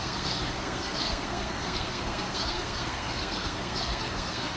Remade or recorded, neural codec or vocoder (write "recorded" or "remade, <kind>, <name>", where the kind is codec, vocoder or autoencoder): remade, codec, SNAC